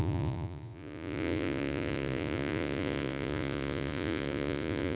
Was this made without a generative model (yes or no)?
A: no